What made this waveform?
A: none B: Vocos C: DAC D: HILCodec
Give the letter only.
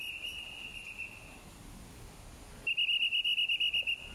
A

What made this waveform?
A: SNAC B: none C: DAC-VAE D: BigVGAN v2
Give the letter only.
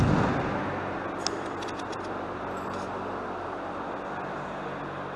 B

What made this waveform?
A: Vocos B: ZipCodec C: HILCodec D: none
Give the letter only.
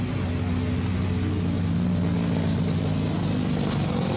D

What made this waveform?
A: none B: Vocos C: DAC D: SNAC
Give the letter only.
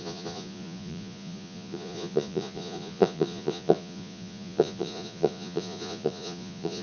B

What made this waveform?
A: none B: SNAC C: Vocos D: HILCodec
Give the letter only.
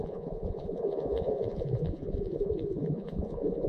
C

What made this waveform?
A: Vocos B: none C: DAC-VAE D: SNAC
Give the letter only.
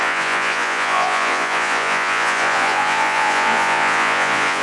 A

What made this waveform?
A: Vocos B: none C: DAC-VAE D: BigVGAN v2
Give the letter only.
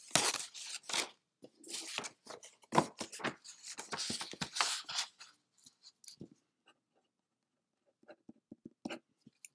B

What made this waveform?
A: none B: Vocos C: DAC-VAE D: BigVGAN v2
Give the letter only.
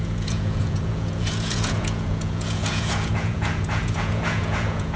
B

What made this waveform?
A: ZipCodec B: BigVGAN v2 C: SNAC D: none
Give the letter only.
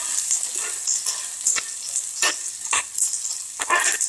D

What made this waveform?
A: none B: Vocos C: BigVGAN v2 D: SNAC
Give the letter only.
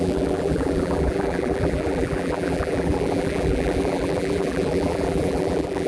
C